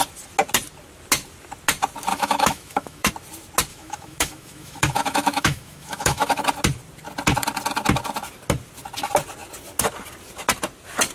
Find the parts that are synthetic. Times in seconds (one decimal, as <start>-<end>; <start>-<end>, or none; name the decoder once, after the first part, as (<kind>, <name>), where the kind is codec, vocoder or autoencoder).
2.1-3.1 (autoencoder, DAC-VAE); 3.7-6.4